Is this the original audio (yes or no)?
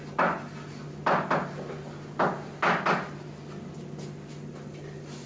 yes